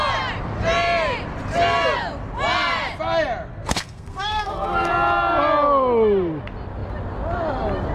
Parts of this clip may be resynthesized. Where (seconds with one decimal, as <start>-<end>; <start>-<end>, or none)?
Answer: 3.5-4.9